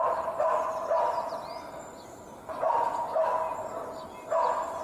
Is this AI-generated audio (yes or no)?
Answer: no